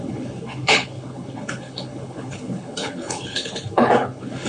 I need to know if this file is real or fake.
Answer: fake